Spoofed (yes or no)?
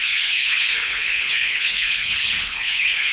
yes